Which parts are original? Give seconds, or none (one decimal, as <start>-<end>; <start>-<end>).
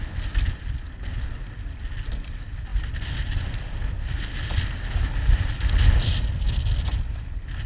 0.0-7.7